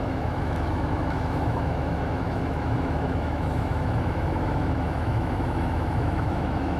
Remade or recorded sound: remade